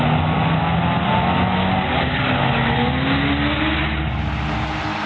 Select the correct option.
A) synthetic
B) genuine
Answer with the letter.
B